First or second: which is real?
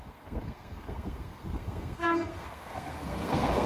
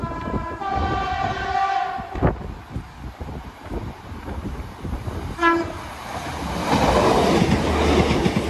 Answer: second